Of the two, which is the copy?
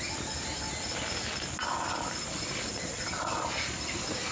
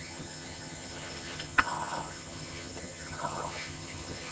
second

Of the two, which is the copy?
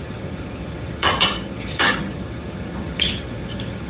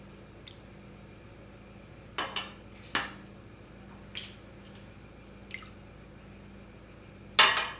first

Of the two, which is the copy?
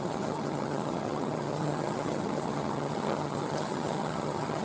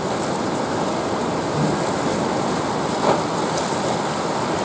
first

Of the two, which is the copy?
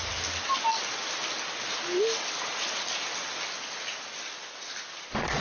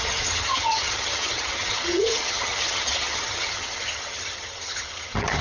second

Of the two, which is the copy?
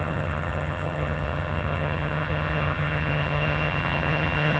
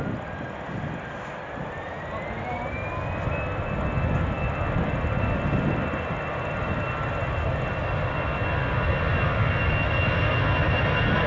first